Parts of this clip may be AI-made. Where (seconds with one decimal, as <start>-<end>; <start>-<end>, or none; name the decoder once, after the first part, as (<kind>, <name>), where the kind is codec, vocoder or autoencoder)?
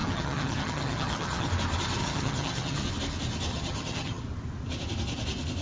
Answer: 0.0-1.5 (vocoder, HiFi-GAN); 2.0-2.9; 3.5-4.2